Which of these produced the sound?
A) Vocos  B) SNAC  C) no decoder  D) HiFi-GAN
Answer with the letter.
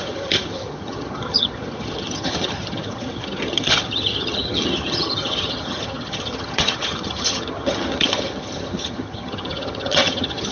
D